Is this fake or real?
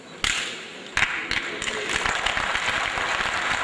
real